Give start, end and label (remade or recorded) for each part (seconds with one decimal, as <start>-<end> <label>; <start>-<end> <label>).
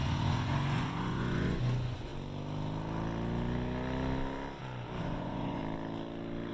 0.0-2.1 remade; 2.1-5.0 recorded; 5.0-5.6 remade; 5.6-6.5 recorded